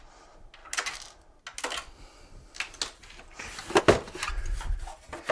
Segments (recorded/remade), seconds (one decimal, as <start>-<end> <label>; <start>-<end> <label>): 0.0-5.3 recorded